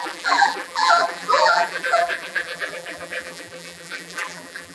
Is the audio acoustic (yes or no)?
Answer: no